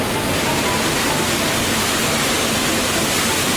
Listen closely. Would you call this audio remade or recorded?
recorded